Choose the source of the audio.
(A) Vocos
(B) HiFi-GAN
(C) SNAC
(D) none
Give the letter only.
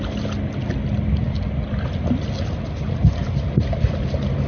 D